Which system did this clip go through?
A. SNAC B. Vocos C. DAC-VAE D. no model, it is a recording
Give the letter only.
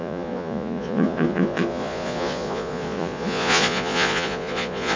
B